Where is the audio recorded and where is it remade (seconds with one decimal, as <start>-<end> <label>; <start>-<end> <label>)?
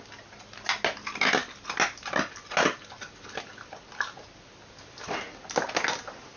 0.0-6.4 recorded